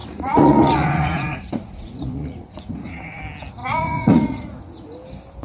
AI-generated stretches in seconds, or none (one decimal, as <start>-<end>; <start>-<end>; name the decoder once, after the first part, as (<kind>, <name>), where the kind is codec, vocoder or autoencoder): 0.0-3.2 (vocoder, Vocos); 3.6-4.6